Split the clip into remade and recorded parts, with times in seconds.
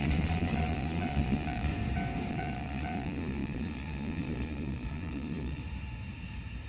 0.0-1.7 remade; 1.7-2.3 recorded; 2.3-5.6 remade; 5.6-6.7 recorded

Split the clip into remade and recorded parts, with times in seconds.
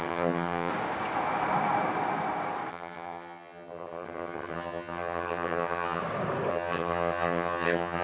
0.0-0.7 remade; 0.7-2.7 recorded; 2.7-6.0 remade; 6.0-6.5 recorded; 6.5-8.0 remade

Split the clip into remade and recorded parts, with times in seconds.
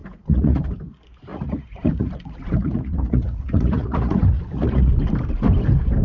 0.0-0.6 remade; 0.6-1.3 recorded; 1.3-4.9 remade; 4.9-6.0 recorded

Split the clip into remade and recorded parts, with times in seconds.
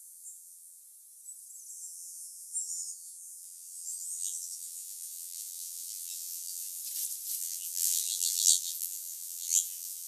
0.0-0.8 remade; 0.8-1.7 recorded; 1.7-6.8 remade; 6.8-7.4 recorded; 7.4-10.1 remade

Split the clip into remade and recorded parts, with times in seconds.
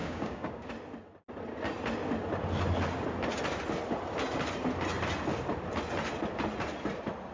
0.0-0.7 remade; 0.7-7.3 recorded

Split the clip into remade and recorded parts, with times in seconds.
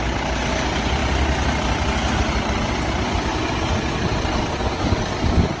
0.0-5.6 recorded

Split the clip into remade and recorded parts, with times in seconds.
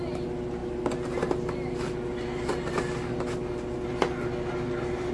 0.0-5.1 recorded